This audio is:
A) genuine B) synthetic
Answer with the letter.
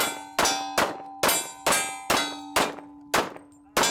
A